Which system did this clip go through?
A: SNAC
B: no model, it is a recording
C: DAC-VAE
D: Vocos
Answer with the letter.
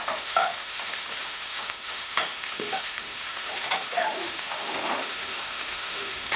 C